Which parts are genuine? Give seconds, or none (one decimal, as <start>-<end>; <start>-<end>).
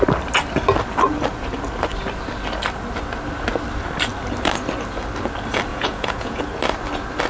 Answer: 0.0-5.7; 6.4-7.3